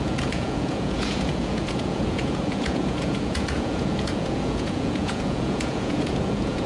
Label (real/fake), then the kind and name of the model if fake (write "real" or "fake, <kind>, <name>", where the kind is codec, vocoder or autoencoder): fake, vocoder, Vocos